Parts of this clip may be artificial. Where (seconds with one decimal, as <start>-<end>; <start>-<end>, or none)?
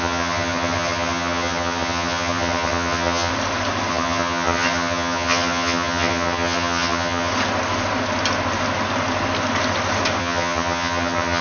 0.0-3.3; 3.9-7.3; 10.2-11.4